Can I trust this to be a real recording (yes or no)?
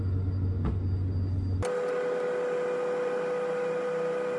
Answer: yes